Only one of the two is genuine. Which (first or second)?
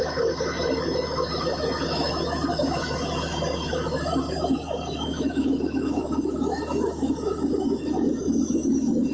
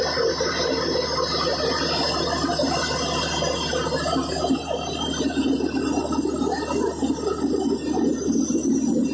second